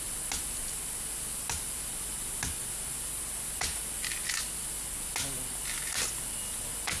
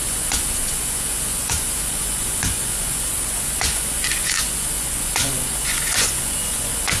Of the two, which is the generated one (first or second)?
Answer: second